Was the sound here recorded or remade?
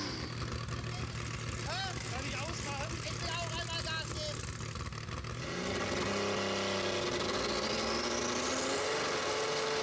recorded